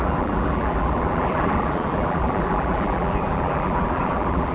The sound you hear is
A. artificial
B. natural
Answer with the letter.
A